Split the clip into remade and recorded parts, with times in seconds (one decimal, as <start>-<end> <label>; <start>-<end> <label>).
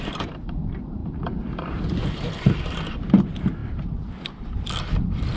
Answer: 0.0-1.0 recorded; 1.0-2.8 remade; 2.8-3.6 recorded; 3.6-4.4 remade; 4.4-5.4 recorded